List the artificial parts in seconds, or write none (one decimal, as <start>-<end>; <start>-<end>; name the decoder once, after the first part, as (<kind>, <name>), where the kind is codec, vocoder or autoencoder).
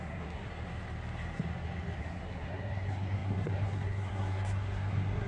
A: 0.0-0.5 (codec, SNAC); 2.0-5.3